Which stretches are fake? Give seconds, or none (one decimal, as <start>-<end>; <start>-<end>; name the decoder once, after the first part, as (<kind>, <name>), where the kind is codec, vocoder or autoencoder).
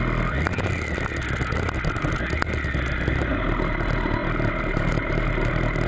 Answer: 4.2-5.5 (vocoder, BigVGAN v2)